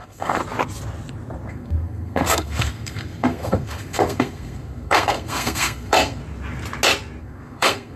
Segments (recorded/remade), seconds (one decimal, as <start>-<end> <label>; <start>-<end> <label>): 0.0-0.4 remade; 0.4-1.5 recorded; 1.5-6.2 remade; 6.2-7.2 recorded; 7.2-8.0 remade